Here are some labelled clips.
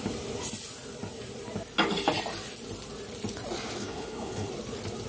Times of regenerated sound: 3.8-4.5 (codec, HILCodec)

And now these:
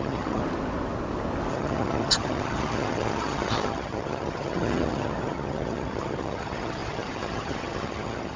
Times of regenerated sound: 0.0-0.4 (vocoder, HiFi-GAN); 1.5-8.4

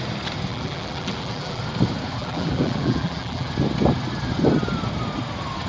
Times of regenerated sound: 0.5-1.6 (vocoder, BigVGAN v2); 2.2-3.5

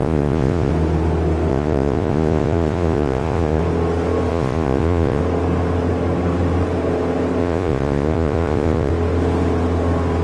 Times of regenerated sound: 0.0-0.7 (vocoder, Vocos); 1.5-3.6; 4.3-5.2; 7.4-8.9

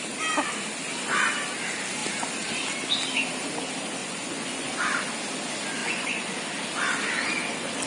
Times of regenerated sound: 4.0-4.7 (vocoder, Vocos); 5.8-6.3

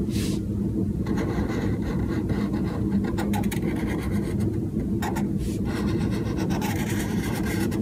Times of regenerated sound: 0.0-7.8 (vocoder, BigVGAN v2)